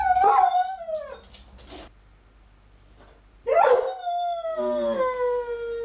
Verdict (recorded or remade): recorded